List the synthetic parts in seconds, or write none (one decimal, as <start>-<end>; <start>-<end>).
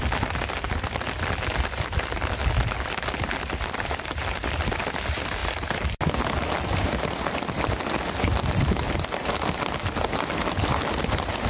none